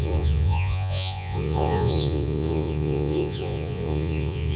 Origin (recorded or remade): remade